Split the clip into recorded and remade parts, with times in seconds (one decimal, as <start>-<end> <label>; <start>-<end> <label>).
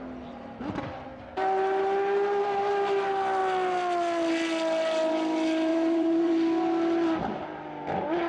0.0-5.7 recorded; 5.7-6.3 remade; 6.3-8.3 recorded